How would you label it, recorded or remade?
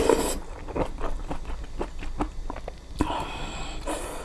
recorded